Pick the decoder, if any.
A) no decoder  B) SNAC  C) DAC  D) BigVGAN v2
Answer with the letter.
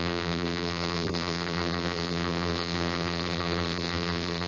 D